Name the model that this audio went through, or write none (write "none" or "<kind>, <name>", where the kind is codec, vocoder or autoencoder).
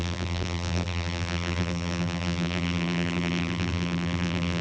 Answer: vocoder, BigVGAN v2